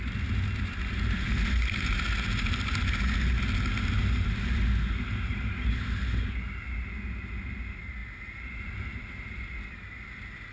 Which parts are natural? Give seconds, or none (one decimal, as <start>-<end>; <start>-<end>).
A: 0.0-10.5